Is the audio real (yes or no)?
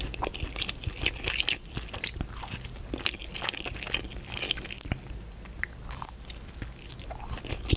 yes